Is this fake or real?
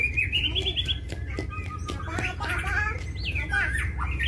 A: real